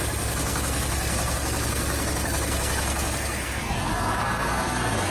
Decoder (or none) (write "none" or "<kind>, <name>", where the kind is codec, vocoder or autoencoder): codec, SNAC